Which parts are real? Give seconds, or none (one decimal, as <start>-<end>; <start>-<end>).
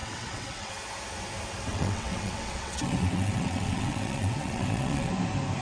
0.7-1.7; 5.1-5.6